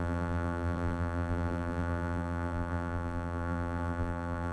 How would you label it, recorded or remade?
remade